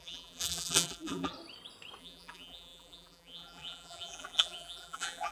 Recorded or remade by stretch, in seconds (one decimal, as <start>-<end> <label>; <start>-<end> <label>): 0.0-1.3 remade; 1.3-2.0 recorded; 2.0-5.3 remade